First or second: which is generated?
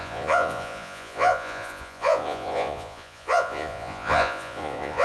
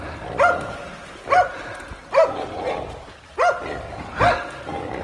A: first